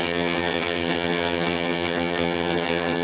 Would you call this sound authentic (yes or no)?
no